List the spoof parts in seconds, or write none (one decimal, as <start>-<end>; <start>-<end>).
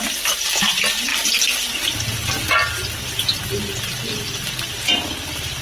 none